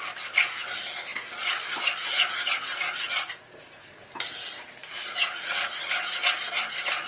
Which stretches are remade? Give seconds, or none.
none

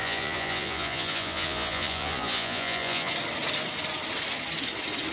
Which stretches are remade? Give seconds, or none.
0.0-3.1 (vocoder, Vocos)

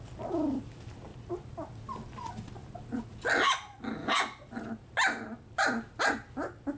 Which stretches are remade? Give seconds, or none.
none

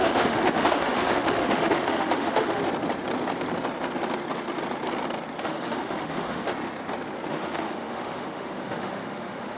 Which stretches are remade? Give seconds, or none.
0.0-2.6 (autoencoder, DAC-VAE); 5.4-6.5; 7.3-9.6

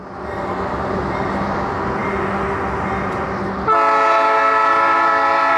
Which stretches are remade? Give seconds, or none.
none

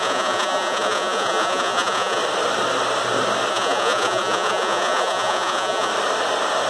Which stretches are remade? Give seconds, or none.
0.0-2.2 (vocoder, Vocos); 3.5-5.9